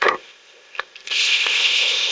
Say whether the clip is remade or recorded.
remade